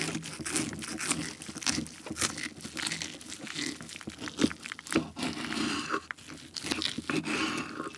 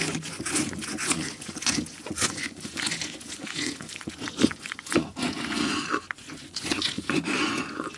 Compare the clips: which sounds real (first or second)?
first